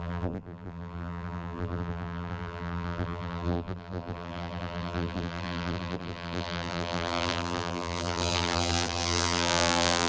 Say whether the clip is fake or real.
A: fake